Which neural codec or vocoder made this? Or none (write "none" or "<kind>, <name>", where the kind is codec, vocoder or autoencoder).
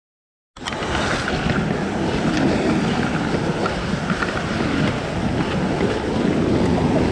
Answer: none